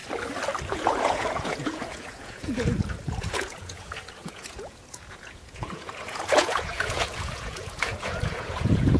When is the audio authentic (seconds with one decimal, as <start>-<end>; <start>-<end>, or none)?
0.0-0.7